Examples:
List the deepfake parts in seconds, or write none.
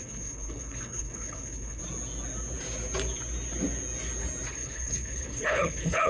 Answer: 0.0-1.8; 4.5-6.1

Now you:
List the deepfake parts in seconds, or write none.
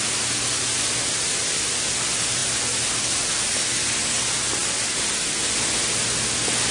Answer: none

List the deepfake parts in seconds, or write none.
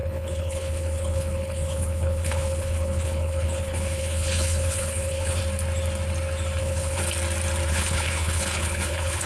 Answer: 0.0-5.4; 6.6-7.0; 7.7-9.3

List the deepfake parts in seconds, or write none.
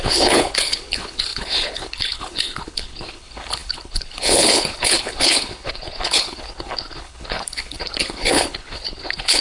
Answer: 0.0-9.4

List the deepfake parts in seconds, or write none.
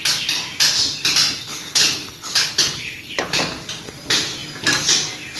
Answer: 1.4-3.4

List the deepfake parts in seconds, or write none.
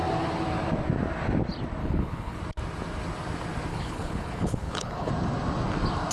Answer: 1.8-2.4; 3.7-5.1